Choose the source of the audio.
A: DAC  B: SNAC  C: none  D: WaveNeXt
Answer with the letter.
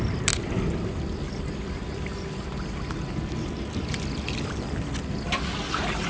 C